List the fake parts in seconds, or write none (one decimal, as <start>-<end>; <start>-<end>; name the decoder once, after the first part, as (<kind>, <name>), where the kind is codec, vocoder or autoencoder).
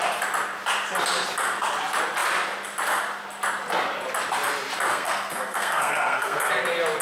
4.9-6.5 (codec, SNAC)